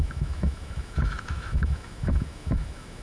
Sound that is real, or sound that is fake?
fake